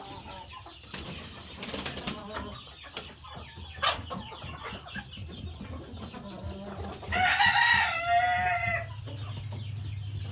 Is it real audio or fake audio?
real